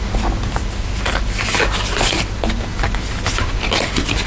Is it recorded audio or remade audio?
recorded